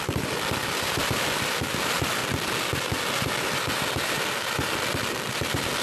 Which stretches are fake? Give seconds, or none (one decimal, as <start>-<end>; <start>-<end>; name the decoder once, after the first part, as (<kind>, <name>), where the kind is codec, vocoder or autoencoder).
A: 0.0-2.2 (vocoder, BigVGAN v2); 3.2-5.8

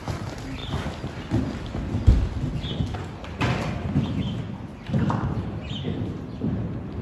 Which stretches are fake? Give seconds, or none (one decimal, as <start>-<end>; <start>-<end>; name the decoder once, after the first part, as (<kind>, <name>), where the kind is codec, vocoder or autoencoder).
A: none

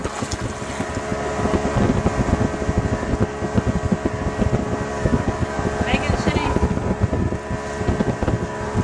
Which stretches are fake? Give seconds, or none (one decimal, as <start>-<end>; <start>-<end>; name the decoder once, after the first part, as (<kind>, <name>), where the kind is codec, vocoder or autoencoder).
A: 4.9-5.6 (codec, DAC)

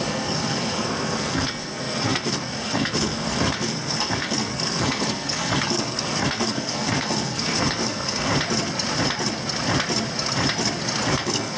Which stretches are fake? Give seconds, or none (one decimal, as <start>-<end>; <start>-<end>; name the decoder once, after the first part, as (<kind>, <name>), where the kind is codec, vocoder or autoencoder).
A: 0.0-8.3 (codec, SNAC); 11.1-11.6

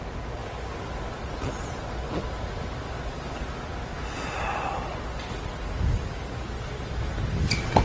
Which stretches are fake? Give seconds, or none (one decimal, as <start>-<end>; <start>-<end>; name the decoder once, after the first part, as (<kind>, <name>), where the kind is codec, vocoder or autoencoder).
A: none

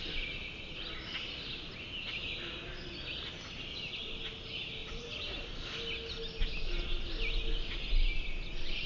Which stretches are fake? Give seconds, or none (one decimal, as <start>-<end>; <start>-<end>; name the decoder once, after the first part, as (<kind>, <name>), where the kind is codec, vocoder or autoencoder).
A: 4.8-5.5 (vocoder, BigVGAN v2)

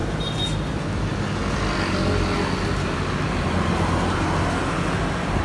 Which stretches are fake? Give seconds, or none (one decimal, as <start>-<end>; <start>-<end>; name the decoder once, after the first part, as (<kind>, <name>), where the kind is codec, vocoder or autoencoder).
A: none